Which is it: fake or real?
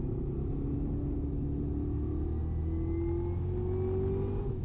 real